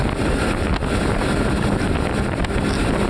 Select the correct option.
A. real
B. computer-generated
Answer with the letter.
A